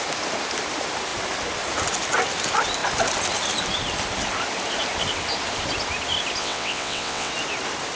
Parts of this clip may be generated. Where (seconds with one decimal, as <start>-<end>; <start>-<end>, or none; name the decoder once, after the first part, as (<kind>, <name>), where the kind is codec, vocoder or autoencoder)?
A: 6.4-7.3 (vocoder, WaveNeXt)